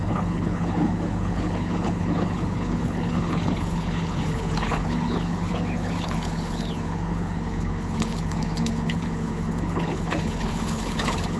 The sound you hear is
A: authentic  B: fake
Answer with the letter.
B